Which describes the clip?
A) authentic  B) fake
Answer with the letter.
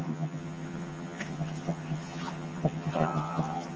B